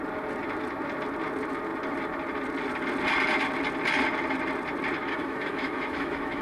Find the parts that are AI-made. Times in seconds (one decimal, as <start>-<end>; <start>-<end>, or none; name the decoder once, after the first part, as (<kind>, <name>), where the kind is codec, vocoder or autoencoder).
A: 5.1-6.4 (autoencoder, DAC-VAE)